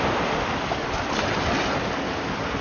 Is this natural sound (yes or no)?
yes